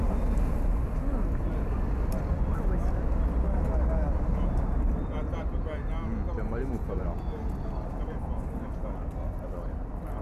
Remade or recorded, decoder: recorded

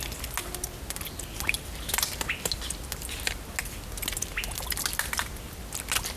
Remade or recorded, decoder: recorded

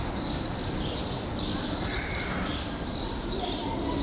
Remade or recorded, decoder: remade, vocoder, BigVGAN v2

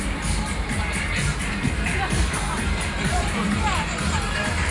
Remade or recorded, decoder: remade, vocoder, BigVGAN v2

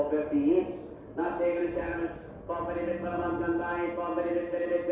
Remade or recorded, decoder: recorded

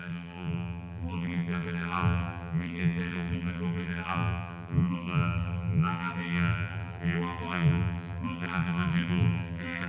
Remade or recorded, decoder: remade, vocoder, BigVGAN v2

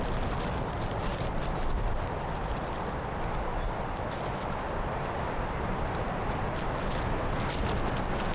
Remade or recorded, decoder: recorded